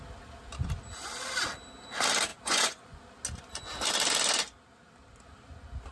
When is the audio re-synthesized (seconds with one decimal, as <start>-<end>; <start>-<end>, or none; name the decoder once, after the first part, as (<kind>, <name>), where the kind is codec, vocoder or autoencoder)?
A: 2.3-3.0 (vocoder, Vocos)